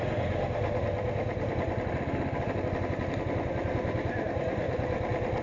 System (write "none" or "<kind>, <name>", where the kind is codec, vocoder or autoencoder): none